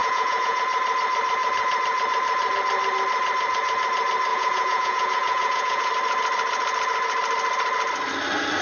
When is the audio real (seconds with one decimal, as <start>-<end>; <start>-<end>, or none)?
0.6-4.3; 5.9-8.6